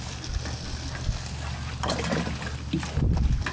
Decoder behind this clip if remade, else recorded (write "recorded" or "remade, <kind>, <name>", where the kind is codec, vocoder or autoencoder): recorded